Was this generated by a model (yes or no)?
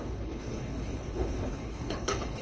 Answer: yes